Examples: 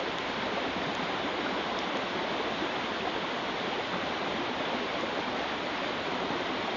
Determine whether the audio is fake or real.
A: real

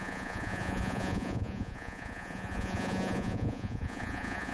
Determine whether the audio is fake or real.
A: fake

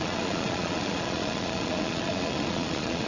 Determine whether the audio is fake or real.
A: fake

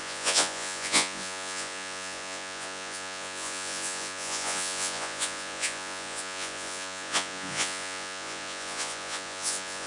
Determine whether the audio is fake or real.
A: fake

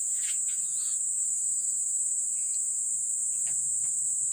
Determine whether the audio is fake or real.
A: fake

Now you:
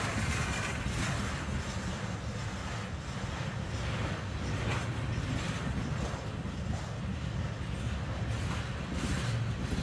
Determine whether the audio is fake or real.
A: real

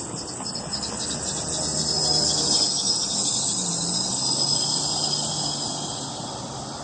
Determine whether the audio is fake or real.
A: real